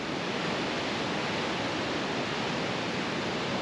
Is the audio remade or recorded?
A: recorded